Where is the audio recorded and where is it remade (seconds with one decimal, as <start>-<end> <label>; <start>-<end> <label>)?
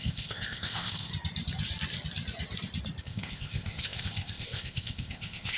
0.0-1.1 remade; 1.1-3.0 recorded; 3.0-5.6 remade